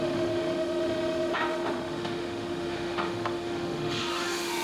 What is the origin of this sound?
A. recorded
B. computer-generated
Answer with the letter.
B